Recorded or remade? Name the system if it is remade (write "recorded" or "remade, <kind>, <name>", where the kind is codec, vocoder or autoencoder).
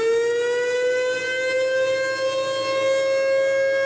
recorded